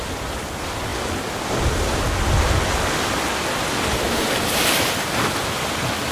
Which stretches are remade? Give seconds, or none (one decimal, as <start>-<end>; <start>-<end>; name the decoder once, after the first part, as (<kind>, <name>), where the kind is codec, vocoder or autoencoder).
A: none